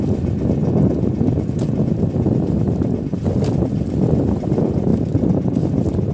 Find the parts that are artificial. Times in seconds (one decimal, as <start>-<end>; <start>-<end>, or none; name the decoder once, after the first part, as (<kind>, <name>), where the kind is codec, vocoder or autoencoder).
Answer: none